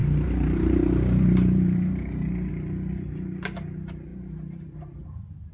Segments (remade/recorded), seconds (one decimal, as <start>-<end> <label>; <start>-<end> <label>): 0.0-2.5 remade; 2.5-4.1 recorded; 4.1-5.0 remade; 5.0-5.5 recorded